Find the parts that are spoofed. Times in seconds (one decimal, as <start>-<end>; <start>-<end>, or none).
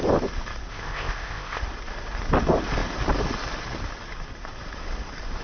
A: 0.7-1.6